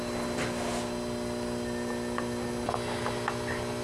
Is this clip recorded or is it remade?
recorded